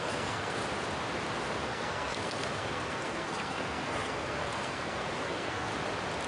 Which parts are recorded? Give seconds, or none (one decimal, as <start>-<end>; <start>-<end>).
0.6-1.6; 5.7-6.3